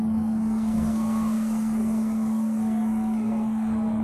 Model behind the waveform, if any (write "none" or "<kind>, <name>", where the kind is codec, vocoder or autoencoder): codec, SNAC